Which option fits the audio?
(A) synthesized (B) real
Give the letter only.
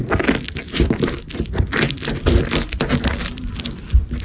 B